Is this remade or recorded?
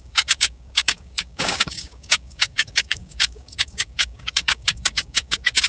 remade